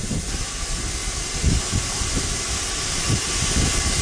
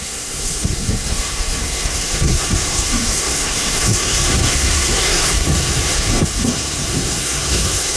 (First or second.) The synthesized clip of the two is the second